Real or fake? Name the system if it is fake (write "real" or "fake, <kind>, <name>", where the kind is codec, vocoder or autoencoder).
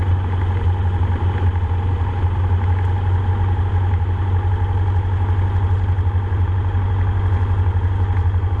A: real